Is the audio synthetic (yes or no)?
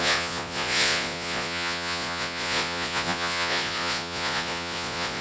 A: yes